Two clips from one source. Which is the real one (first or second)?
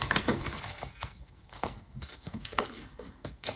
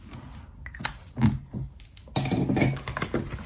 second